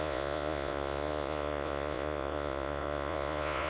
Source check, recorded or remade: remade